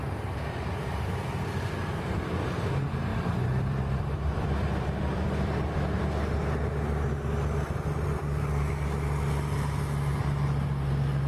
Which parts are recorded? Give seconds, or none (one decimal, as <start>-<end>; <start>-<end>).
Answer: 0.0-3.1; 6.0-11.3